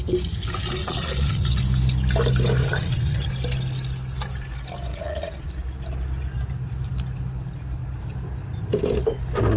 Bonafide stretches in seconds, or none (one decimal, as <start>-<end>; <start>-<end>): 0.0-0.8; 1.6-2.6; 3.3-4.9; 5.5-9.6